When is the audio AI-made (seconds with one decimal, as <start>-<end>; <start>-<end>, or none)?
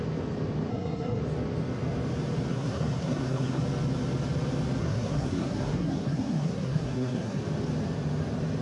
0.7-1.2; 2.5-3.6; 4.8-7.4